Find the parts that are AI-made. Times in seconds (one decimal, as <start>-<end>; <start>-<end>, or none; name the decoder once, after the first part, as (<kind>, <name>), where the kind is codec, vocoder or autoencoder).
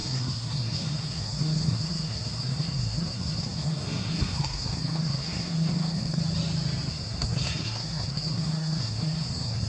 0.0-6.2 (codec, SNAC); 6.9-9.7